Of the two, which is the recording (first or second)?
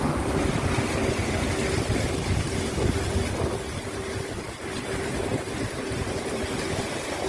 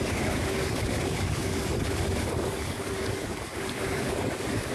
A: first